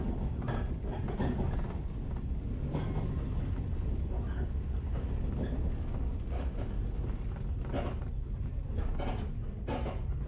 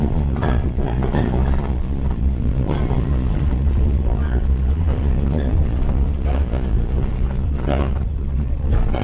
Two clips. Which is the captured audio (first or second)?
first